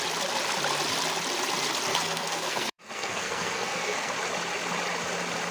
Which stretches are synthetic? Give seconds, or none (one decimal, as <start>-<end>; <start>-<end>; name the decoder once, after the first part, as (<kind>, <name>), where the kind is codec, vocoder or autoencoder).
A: 1.9-4.1 (codec, SNAC)